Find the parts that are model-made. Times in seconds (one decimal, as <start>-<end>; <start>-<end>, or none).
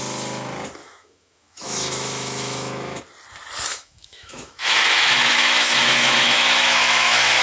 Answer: 0.8-3.0; 3.7-7.4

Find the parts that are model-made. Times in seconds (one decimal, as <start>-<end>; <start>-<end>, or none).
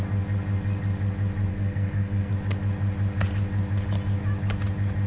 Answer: 1.5-2.3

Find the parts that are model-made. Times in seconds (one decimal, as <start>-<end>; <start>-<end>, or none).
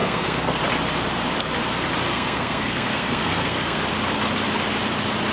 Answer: 0.0-0.6; 2.1-3.8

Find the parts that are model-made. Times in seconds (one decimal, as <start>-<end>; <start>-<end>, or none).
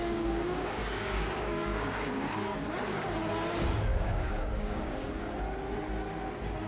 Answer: 0.0-3.2; 3.9-5.1